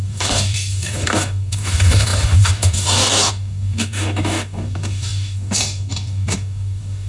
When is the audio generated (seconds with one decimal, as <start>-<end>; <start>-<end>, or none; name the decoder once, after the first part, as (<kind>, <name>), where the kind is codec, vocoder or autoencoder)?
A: 0.0-7.1 (codec, DAC)

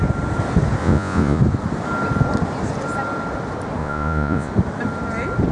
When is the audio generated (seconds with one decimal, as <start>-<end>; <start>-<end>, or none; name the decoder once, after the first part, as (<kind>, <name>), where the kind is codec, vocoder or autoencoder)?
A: 0.8-1.4 (vocoder, Vocos); 3.8-4.5

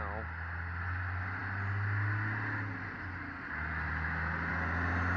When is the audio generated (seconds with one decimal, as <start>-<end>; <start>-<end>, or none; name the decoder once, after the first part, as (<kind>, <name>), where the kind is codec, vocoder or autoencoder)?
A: none

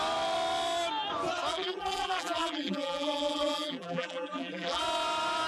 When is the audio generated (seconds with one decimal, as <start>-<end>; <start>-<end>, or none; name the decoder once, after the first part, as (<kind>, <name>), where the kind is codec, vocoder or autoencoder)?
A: 1.5-4.8 (vocoder, BigVGAN v2)

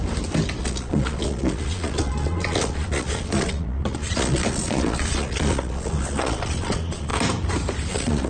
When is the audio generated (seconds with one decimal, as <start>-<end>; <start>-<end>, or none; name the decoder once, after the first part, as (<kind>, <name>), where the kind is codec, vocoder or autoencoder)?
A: 0.6-7.1 (vocoder, Vocos); 7.9-8.3

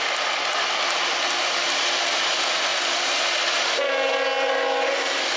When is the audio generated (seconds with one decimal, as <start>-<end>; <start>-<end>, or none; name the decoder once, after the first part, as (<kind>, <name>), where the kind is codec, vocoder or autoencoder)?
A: none